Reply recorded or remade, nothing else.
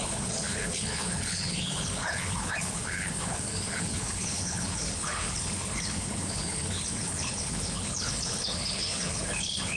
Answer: remade